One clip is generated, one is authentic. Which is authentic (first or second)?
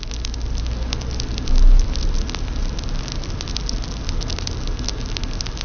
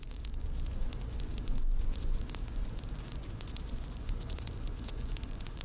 first